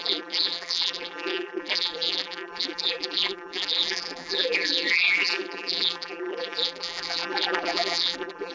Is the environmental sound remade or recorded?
remade